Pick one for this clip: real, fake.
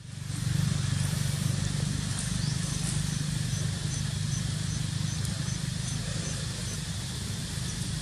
real